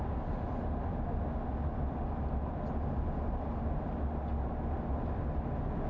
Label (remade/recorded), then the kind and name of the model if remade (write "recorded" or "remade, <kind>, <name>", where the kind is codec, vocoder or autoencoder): recorded